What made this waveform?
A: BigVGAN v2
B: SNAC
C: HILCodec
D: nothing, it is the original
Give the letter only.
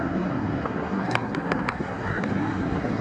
B